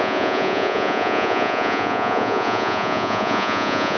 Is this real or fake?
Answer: fake